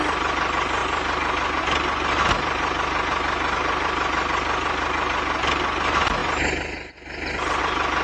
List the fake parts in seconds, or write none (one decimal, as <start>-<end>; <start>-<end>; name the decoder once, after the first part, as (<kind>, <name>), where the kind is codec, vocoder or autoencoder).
none

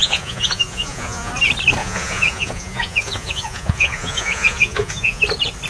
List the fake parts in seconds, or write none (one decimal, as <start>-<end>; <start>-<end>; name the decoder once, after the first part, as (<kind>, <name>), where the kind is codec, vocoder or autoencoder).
0.0-1.3 (vocoder, Vocos); 1.8-5.2

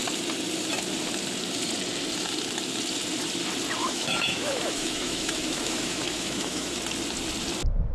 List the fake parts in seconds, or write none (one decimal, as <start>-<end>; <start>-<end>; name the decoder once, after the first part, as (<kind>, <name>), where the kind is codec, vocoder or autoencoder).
3.8-6.8 (autoencoder, DAC-VAE)

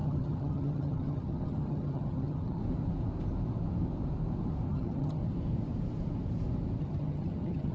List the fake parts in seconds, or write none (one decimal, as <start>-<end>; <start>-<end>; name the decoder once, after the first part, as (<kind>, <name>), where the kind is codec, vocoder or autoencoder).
0.0-2.6 (vocoder, HiFi-GAN); 4.7-5.2; 6.8-7.7

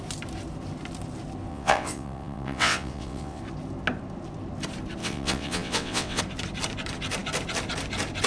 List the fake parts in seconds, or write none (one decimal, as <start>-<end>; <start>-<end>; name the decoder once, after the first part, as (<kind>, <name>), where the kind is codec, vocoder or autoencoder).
1.5-3.4 (vocoder, WaveNeXt); 5.0-6.2